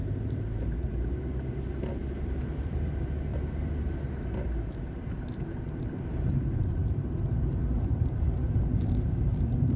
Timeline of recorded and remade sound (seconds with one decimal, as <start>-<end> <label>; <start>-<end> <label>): 0.0-2.0 remade; 2.0-2.5 recorded; 2.5-3.3 remade; 3.3-5.6 recorded; 5.6-9.8 remade